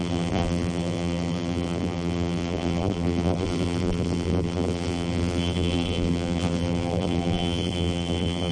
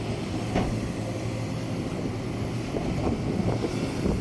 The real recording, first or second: second